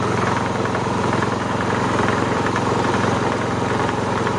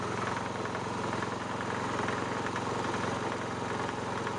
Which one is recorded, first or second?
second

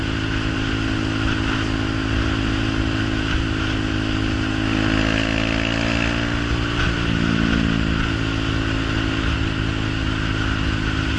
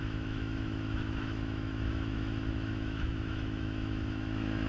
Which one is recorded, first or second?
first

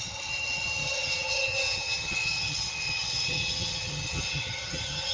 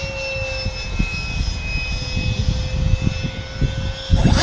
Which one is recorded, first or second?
second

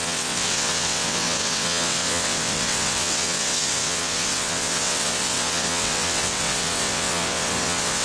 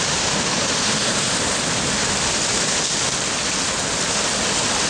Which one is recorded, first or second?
second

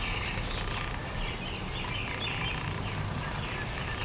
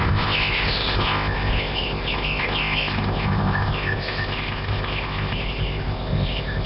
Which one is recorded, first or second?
first